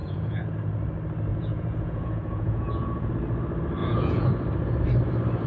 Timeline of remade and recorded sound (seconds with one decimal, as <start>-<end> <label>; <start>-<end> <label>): 0.0-0.7 remade; 0.7-1.3 recorded; 1.3-3.1 remade; 3.1-3.8 recorded; 3.8-4.3 remade; 4.3-5.5 recorded